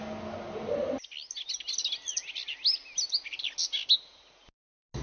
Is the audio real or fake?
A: real